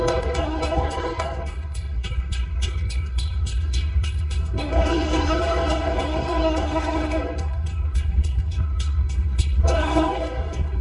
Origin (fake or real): fake